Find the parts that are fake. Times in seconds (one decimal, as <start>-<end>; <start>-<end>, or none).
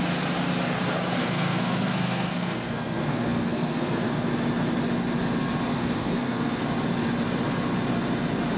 1.2-4.1; 5.7-6.6